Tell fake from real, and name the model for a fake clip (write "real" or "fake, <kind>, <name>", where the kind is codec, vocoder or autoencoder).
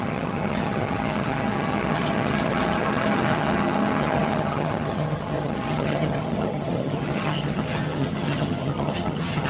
fake, vocoder, HiFi-GAN